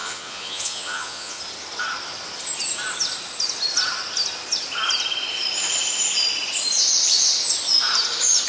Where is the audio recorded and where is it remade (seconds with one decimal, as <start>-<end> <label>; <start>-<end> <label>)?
0.0-1.4 remade; 1.4-8.5 recorded